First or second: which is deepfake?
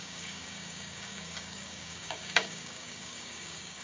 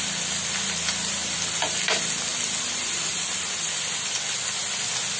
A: first